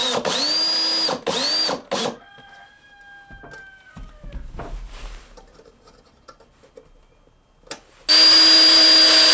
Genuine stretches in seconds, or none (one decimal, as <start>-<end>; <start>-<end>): 0.0-9.3